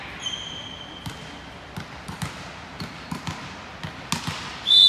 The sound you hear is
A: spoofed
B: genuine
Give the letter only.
B